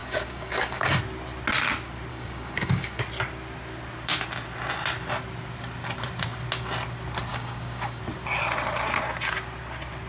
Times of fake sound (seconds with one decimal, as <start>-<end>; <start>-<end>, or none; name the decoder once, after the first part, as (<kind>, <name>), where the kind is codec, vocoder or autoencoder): 0.0-1.0 (codec, DAC); 2.1-3.0; 7.3-8.0